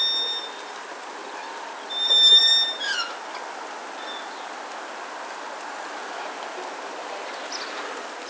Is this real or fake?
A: real